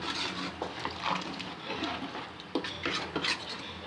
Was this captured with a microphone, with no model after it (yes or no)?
yes